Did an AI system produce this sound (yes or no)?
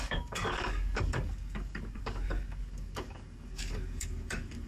yes